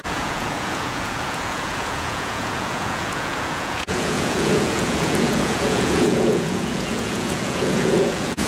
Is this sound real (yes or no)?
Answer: no